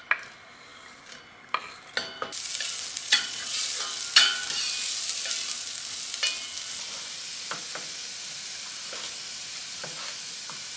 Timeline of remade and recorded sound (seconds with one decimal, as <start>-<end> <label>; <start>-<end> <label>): 0.0-3.0 recorded; 3.0-3.6 remade; 3.6-10.8 recorded